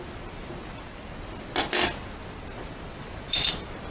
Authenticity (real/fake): real